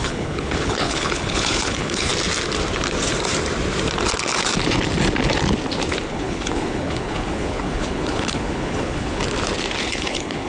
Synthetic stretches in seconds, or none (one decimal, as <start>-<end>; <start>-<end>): 0.0-2.1; 6.1-9.2; 9.8-10.5